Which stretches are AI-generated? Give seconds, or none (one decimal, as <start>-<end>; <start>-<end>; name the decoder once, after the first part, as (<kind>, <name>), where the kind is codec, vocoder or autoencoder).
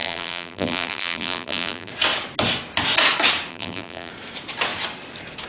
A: 0.0-1.9 (vocoder, BigVGAN v2); 3.5-4.1